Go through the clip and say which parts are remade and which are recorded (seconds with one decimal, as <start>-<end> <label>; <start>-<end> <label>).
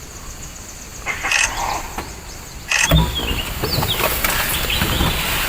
0.0-5.5 recorded